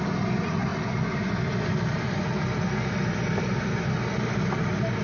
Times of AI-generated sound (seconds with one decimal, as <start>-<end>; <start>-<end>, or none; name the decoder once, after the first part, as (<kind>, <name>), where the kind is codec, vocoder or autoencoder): none